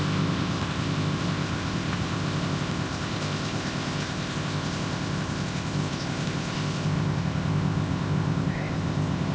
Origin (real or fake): fake